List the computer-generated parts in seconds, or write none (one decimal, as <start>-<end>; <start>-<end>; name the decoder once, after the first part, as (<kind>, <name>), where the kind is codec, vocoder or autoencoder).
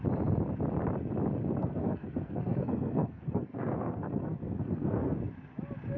1.6-5.2 (codec, SNAC)